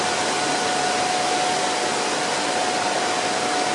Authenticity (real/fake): real